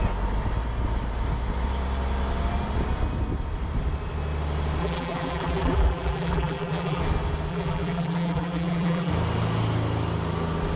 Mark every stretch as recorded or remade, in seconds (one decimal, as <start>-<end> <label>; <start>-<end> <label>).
0.0-4.8 recorded; 4.8-7.0 remade; 7.0-7.5 recorded; 7.5-9.1 remade; 9.1-10.8 recorded